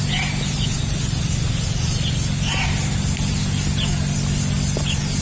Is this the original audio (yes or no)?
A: yes